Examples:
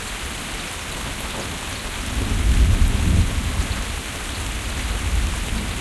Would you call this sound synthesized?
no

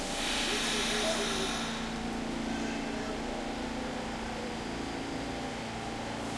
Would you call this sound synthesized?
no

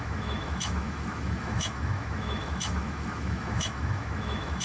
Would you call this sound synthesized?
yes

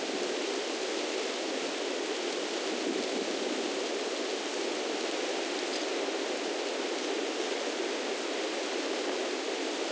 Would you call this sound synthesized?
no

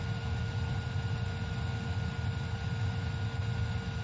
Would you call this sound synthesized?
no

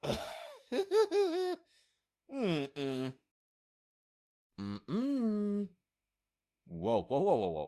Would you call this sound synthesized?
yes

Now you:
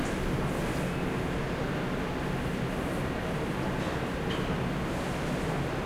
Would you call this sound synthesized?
no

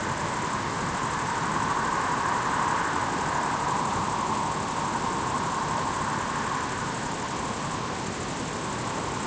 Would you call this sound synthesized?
no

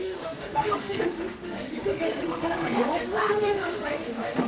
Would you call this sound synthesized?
yes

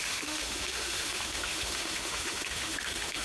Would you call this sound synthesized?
yes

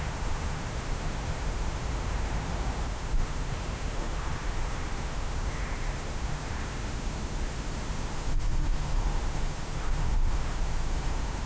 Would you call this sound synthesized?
yes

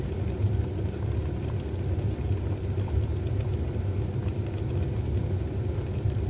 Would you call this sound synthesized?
no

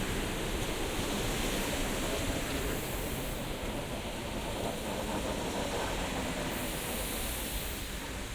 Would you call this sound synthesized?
no